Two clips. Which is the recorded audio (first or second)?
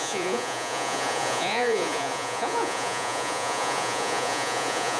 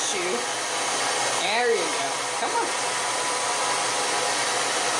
second